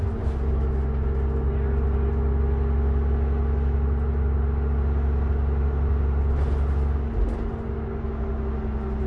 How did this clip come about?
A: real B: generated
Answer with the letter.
A